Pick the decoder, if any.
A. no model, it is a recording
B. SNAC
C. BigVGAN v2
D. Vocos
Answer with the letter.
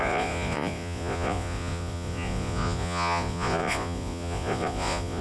D